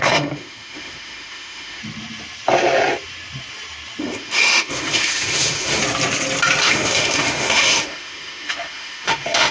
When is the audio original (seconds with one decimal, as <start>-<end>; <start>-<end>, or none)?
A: 1.8-4.0; 5.8-6.6

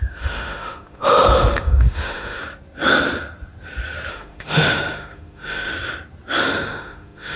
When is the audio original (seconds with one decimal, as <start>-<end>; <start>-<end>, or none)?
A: 2.4-4.1; 5.7-6.4

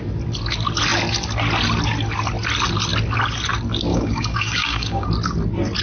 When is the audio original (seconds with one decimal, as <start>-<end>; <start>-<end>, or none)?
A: 0.0-3.9; 5.1-5.8

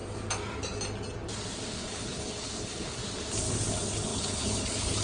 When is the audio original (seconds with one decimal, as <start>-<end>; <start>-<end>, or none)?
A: 0.0-1.7; 3.0-3.5

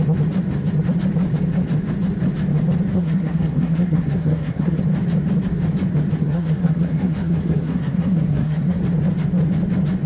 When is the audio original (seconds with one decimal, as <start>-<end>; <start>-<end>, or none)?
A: 0.0-2.9; 4.8-6.2; 8.8-10.1

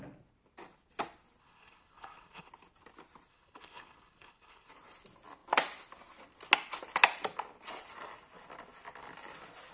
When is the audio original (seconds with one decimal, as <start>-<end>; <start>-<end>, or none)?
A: 0.0-1.4; 2.5-3.3; 4.7-9.7

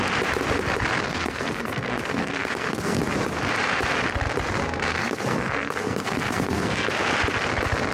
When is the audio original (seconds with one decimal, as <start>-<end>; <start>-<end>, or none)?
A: 0.0-1.1; 3.0-5.0; 6.9-7.9

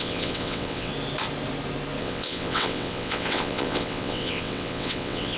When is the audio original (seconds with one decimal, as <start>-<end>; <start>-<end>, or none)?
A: 0.9-2.0